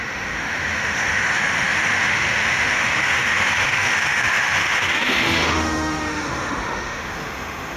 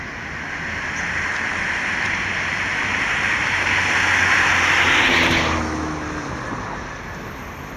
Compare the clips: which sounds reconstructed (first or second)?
first